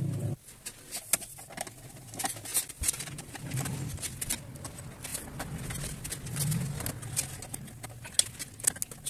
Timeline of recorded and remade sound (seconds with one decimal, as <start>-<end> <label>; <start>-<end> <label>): 0.0-2.5 recorded; 2.5-3.6 remade; 3.6-9.1 recorded

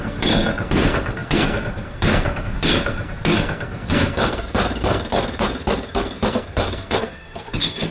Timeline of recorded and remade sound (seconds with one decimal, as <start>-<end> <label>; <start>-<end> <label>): 0.0-7.9 remade

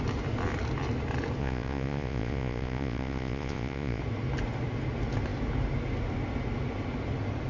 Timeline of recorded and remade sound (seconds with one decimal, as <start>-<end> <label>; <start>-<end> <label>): 0.0-1.4 recorded; 1.4-4.0 remade; 4.0-7.5 recorded

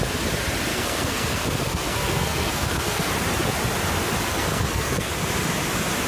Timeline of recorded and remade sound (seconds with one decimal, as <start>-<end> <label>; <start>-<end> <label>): 0.0-0.7 recorded; 0.7-3.1 remade; 3.1-4.3 recorded; 4.3-5.1 remade; 5.1-6.1 recorded